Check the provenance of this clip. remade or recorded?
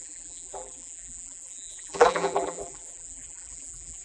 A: remade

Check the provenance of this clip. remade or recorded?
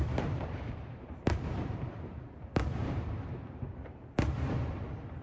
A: remade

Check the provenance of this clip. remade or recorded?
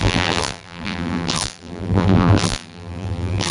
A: remade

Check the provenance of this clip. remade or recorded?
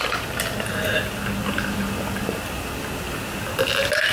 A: recorded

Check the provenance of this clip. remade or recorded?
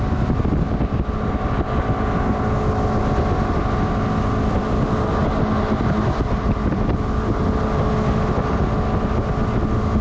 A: recorded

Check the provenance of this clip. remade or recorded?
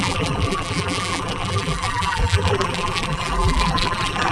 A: remade